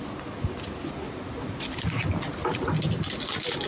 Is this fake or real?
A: real